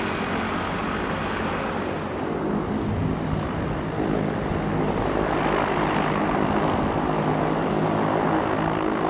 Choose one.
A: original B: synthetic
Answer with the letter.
A